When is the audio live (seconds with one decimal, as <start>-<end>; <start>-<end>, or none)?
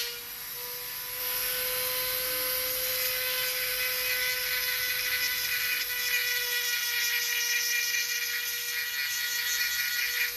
0.0-10.4